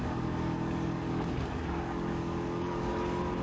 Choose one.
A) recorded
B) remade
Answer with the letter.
B